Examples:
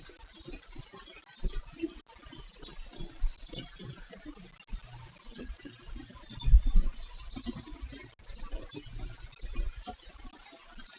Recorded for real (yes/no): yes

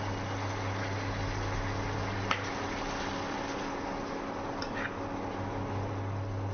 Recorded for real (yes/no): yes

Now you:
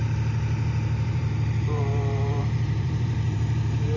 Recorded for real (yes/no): no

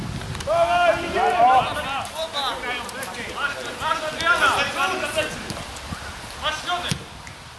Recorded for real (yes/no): yes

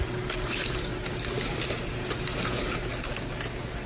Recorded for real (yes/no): yes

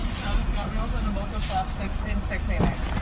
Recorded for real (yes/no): yes